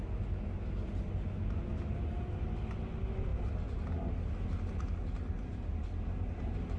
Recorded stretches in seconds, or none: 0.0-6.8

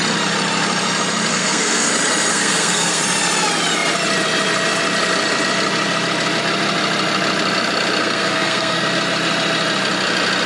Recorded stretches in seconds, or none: 0.0-1.3; 1.9-2.3; 3.0-8.0; 8.8-10.5

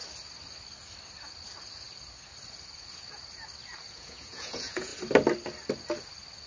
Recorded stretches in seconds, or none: 0.0-3.9; 4.9-6.5

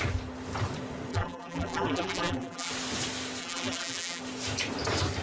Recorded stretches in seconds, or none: 0.0-1.1; 2.7-3.4; 4.2-5.2

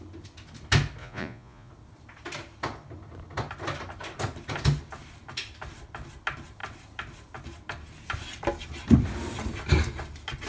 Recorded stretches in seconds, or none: 0.0-1.0; 1.7-10.5

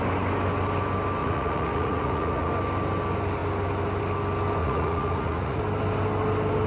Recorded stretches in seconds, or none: 0.0-1.2; 2.5-4.6; 5.6-6.7

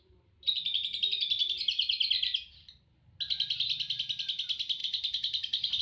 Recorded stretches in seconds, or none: 0.0-5.8

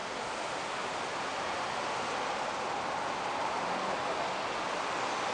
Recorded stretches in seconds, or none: 0.0-5.3